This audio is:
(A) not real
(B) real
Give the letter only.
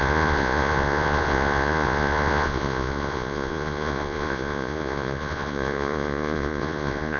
A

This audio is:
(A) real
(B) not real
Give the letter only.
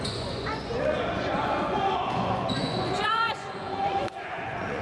B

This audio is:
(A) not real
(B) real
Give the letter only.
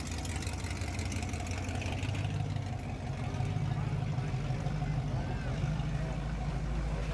B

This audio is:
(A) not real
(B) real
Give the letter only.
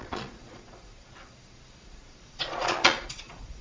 A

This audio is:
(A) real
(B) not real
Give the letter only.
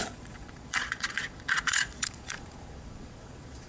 B